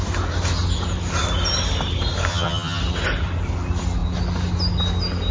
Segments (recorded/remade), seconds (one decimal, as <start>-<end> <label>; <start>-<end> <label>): 0.0-2.3 recorded; 2.3-2.8 remade; 2.8-5.3 recorded